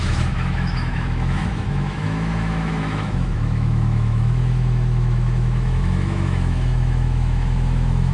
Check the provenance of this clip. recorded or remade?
remade